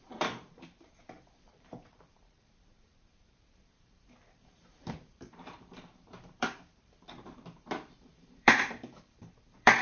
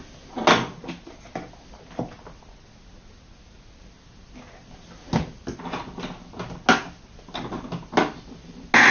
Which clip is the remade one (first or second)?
first